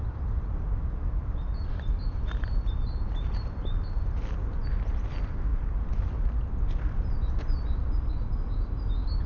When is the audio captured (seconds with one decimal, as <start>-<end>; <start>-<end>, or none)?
0.0-9.3